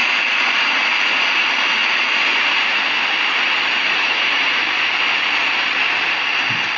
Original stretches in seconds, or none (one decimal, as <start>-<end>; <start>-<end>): 1.1-1.8; 2.9-3.8; 4.4-6.8